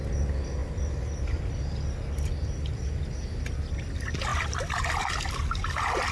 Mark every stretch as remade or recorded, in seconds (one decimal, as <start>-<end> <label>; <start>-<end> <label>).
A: 0.0-6.1 recorded